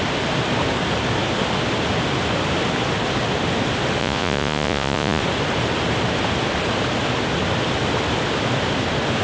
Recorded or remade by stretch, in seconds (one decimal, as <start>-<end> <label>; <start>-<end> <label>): 0.0-4.0 recorded; 4.0-5.2 remade; 5.2-9.2 recorded